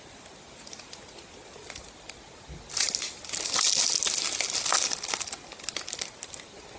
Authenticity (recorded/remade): recorded